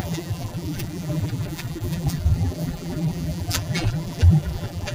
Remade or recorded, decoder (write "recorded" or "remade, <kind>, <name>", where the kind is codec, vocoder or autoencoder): remade, vocoder, BigVGAN v2